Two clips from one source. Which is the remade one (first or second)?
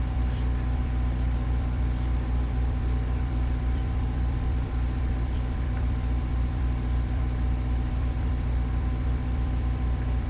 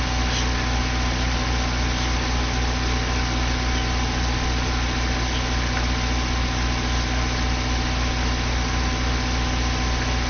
first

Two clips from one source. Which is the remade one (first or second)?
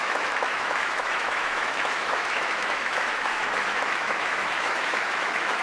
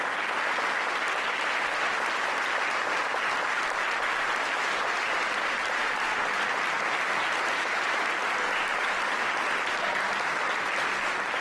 first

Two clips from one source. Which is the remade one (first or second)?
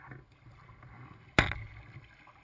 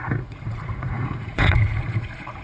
second